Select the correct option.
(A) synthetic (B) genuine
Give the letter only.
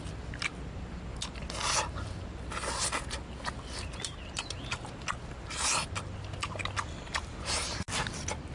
B